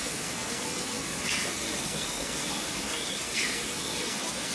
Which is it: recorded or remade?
remade